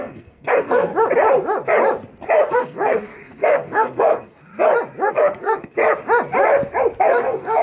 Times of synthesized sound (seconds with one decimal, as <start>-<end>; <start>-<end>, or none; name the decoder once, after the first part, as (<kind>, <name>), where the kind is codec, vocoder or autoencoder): 0.0-0.9 (codec, SNAC); 2.5-4.5; 5.1-5.8; 7.0-7.6